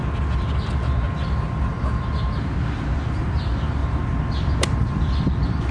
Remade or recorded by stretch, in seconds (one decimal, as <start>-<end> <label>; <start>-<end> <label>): 0.0-5.7 recorded